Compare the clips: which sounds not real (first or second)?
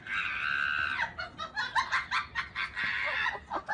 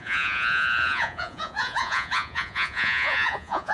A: second